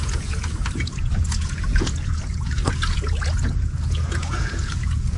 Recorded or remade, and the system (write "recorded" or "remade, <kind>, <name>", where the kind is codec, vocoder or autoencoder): remade, vocoder, Vocos